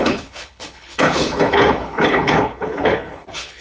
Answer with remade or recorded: remade